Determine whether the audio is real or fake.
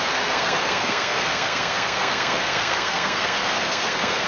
fake